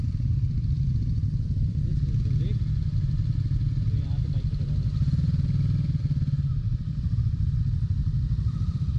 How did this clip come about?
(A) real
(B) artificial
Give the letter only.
B